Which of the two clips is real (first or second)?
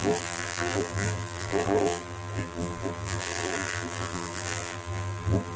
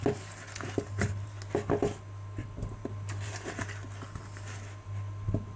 second